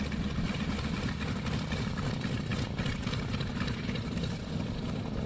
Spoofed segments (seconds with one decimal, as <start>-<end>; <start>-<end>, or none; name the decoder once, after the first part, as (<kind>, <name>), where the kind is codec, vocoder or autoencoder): none